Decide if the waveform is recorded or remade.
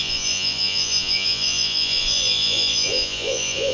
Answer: remade